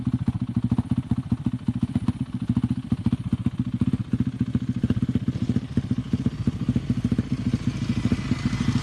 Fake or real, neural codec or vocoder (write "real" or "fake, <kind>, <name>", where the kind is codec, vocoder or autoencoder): real